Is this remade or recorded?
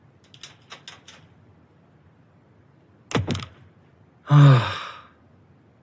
recorded